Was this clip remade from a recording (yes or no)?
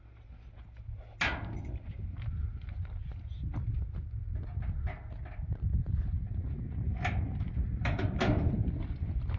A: no